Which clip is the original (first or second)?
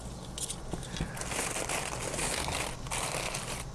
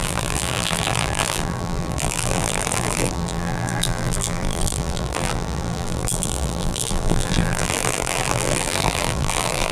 first